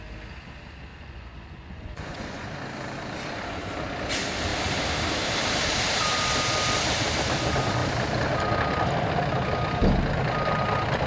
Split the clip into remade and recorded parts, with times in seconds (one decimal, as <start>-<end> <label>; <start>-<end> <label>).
0.0-0.9 recorded; 0.9-2.5 remade; 2.5-11.1 recorded